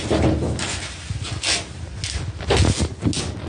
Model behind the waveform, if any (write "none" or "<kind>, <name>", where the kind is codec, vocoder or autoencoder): none